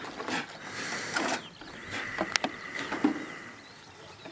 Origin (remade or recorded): recorded